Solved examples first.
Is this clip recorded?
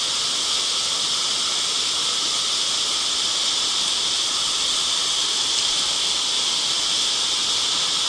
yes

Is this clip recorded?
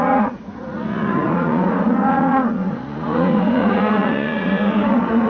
no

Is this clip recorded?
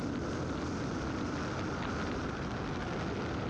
yes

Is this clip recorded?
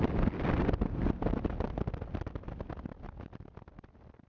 yes